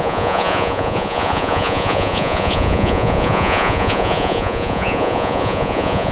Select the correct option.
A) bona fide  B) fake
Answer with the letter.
B